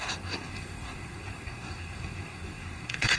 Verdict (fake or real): fake